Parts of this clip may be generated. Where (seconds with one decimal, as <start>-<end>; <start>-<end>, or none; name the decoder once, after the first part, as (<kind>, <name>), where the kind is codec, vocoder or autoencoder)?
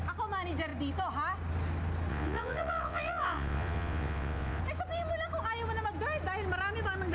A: 2.1-4.6 (vocoder, WaveNeXt)